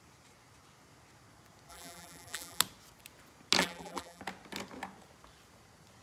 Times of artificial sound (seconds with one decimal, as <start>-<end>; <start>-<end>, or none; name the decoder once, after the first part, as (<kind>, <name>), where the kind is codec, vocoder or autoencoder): 1.7-2.6 (vocoder, BigVGAN v2); 3.6-4.2